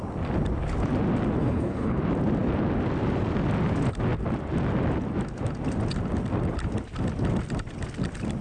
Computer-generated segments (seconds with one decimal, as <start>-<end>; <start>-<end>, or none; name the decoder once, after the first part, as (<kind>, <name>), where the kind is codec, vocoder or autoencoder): 1.4-2.0 (codec, HILCodec)